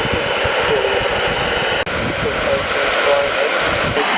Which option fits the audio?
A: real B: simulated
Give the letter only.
A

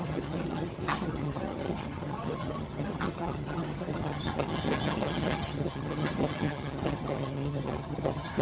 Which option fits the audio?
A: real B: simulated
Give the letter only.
B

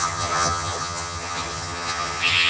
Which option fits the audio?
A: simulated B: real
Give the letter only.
A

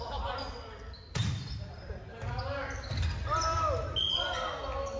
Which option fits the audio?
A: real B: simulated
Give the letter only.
A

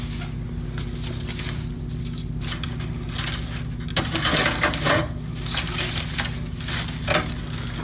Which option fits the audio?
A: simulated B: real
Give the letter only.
B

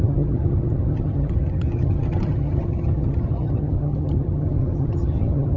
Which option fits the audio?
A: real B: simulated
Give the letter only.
B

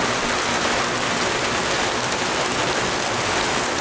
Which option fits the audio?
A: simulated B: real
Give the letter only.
B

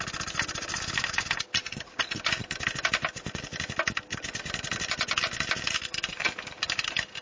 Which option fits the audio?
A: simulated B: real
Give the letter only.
B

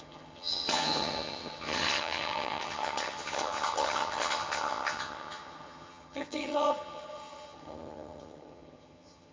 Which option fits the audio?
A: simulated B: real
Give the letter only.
A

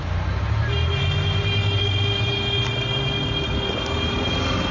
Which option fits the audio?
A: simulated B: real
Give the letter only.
B